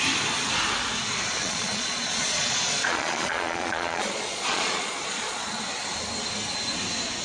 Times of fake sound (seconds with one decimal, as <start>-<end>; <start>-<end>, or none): 1.4-5.6

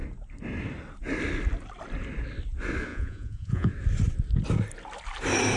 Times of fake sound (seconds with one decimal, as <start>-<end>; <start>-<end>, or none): 2.9-3.7

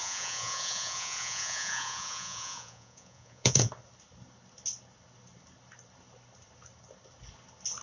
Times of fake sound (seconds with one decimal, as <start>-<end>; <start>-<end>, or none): 0.0-3.7

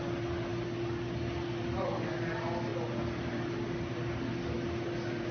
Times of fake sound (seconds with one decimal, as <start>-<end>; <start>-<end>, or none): none

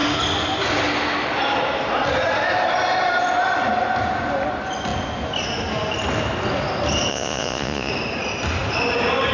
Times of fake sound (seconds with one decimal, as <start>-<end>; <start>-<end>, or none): 7.1-7.9

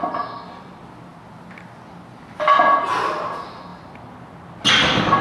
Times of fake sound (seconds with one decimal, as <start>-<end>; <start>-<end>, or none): none

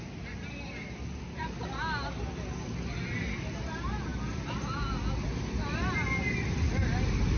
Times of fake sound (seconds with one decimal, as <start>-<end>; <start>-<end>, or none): none

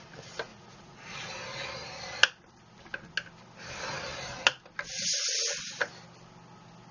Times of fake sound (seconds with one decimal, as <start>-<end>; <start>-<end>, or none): 0.5-1.1